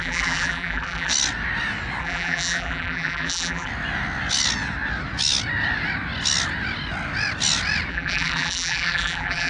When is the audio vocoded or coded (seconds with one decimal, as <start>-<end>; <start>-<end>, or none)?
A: 0.0-1.1; 2.0-3.7; 7.9-9.5